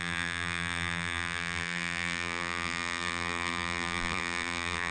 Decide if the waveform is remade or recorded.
remade